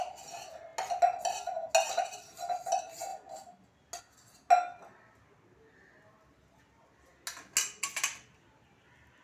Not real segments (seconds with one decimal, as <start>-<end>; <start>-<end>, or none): none